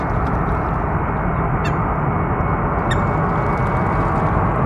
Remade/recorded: recorded